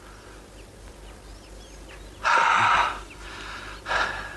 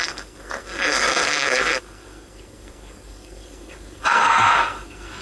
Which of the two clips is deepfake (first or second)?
second